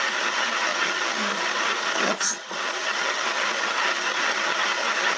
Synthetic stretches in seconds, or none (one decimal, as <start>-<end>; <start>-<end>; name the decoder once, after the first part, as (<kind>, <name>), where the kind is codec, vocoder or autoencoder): 0.0-5.2 (vocoder, HiFi-GAN)